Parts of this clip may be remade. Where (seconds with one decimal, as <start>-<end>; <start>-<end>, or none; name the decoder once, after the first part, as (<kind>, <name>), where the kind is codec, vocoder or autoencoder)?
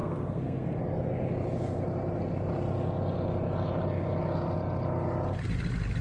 0.0-0.8 (codec, SNAC)